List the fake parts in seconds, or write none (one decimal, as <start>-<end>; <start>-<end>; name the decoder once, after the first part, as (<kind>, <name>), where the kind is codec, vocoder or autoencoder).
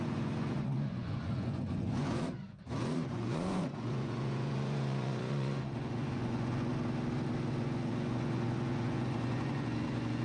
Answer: 0.0-6.7 (vocoder, Vocos); 7.6-10.2